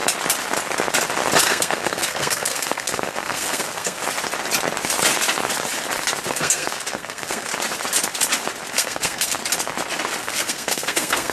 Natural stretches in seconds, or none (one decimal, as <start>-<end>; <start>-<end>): 0.0-1.4; 4.0-6.3; 7.5-8.7; 9.4-10.2